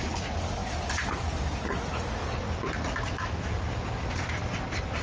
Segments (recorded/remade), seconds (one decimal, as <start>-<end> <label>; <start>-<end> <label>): 0.0-5.0 recorded